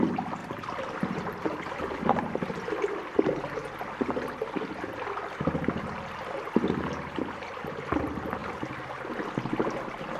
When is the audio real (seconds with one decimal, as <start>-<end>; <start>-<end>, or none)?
0.0-0.4; 3.3-10.2